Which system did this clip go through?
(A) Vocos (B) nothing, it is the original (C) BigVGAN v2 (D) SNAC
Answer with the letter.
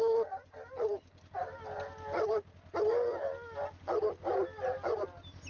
B